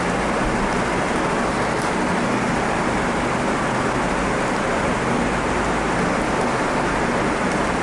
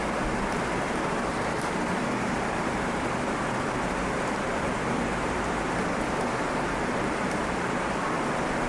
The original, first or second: first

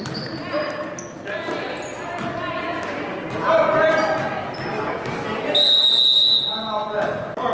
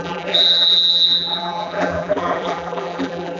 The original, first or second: first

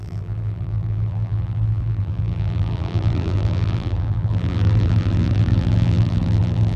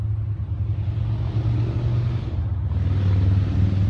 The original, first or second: second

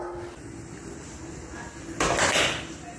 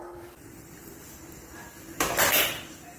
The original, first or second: first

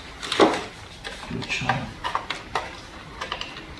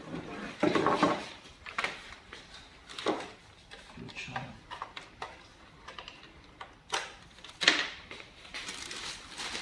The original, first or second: first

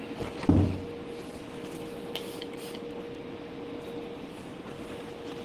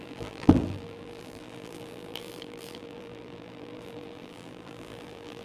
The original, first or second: first